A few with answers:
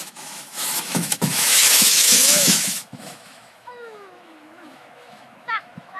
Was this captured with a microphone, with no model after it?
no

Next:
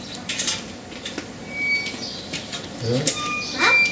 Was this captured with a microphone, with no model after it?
yes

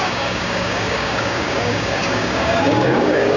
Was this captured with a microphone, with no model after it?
no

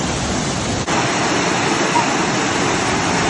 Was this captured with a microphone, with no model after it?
yes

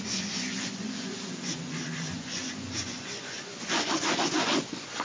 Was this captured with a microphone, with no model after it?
no